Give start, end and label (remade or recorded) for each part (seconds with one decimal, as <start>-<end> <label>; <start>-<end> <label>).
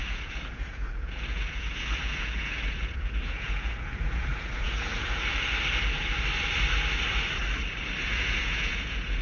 0.0-5.3 remade; 5.3-8.0 recorded; 8.0-9.2 remade